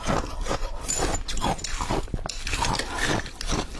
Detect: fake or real real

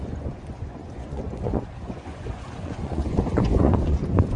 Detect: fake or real fake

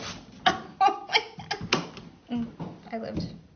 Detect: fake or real real